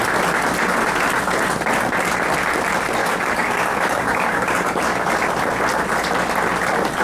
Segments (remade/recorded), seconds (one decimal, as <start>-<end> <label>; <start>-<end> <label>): 0.0-3.0 recorded; 3.0-5.1 remade; 5.1-7.0 recorded